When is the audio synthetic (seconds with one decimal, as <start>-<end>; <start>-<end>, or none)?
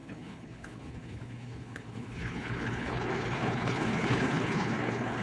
0.0-5.2